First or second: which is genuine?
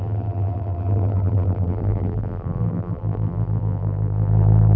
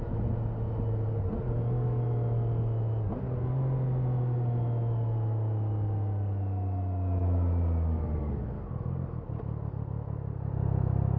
second